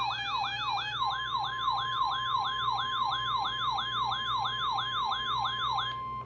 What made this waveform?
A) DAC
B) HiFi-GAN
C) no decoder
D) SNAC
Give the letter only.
C